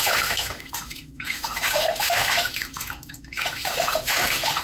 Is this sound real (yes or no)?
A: no